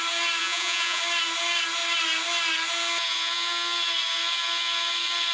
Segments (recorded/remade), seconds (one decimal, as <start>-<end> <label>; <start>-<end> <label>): 0.0-0.4 recorded; 0.4-1.0 remade; 1.0-5.3 recorded